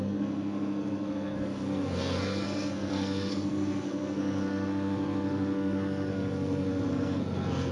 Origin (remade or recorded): remade